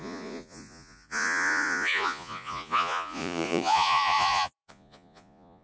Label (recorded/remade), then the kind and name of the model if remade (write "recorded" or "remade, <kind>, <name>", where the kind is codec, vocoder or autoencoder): remade, vocoder, Vocos